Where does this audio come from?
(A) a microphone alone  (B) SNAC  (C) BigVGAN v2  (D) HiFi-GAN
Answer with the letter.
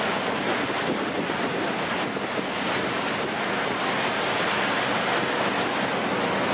A